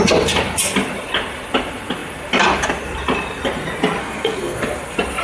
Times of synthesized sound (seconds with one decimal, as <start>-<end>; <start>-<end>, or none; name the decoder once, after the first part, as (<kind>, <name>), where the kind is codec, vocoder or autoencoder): 4.0-4.6 (codec, SNAC)